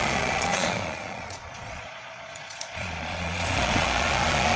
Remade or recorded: remade